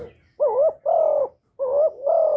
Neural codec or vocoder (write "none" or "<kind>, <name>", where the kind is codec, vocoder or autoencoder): none